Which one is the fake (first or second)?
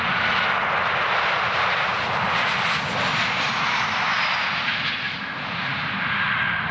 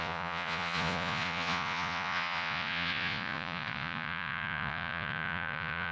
second